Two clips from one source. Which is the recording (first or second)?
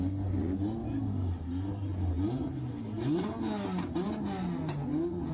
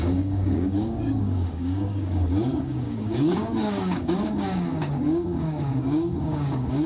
first